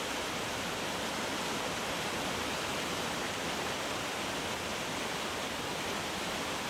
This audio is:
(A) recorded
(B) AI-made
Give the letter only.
A